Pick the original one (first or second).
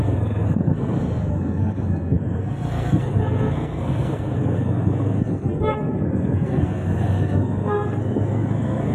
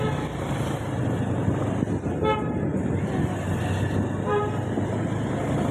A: second